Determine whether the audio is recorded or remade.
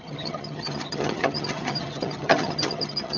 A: remade